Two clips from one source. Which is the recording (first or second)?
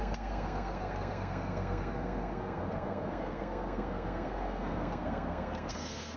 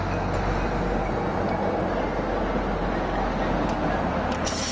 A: second